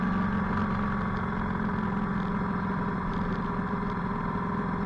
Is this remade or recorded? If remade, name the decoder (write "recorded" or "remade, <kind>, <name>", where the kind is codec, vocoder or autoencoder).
recorded